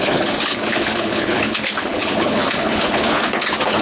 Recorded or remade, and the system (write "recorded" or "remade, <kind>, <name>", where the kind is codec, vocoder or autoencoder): remade, codec, HILCodec